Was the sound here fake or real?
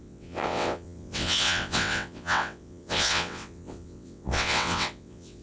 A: fake